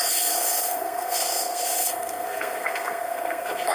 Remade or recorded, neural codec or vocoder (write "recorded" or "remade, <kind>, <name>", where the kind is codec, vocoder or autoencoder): remade, codec, SNAC